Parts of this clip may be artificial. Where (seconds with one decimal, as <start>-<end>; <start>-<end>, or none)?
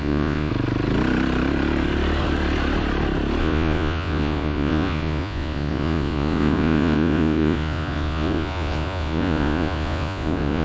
0.0-0.5; 3.4-10.6